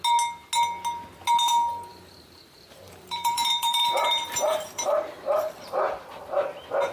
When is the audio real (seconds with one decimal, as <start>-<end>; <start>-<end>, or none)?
0.0-1.9; 6.0-6.9